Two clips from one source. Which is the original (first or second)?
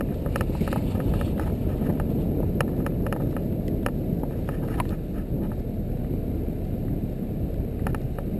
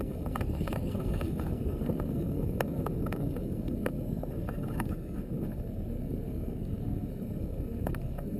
first